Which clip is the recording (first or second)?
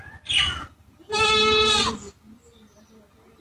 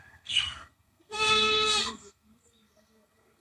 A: first